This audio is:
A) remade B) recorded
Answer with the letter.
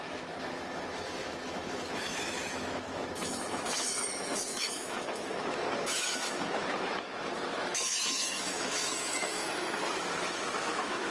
A